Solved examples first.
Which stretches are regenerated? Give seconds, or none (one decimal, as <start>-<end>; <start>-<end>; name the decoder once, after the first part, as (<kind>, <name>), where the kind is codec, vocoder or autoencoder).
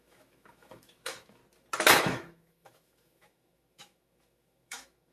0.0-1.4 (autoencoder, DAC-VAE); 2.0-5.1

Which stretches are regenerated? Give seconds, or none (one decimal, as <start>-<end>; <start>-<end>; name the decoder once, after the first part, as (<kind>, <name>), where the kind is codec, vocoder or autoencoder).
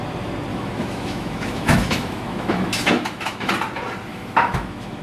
0.5-3.5 (autoencoder, DAC-VAE); 4.1-5.0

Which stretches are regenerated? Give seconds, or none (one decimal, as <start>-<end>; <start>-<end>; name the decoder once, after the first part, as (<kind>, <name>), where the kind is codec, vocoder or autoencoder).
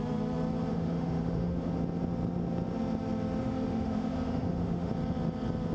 0.7-1.7 (autoencoder, DAC-VAE); 3.4-4.9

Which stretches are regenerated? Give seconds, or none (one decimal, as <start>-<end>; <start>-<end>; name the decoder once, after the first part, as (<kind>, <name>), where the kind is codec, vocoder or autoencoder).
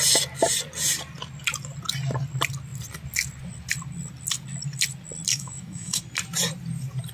5.3-6.0 (autoencoder, DAC-VAE)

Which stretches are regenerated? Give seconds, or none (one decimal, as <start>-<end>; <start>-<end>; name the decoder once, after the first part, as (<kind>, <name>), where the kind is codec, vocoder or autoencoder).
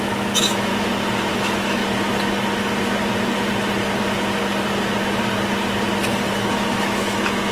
0.0-0.7 (autoencoder, DAC-VAE); 1.3-1.8; 6.3-7.5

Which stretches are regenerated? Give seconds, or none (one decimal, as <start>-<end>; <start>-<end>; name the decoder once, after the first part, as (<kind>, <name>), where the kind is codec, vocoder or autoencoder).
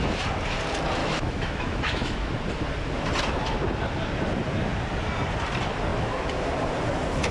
1.0-2.3 (autoencoder, DAC-VAE)